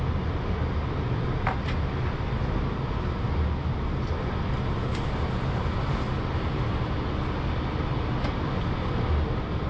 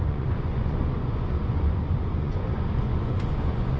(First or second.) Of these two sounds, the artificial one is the second